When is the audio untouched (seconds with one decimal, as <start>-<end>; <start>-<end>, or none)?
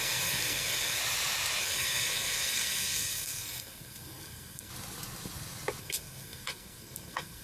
1.0-1.6; 4.7-5.8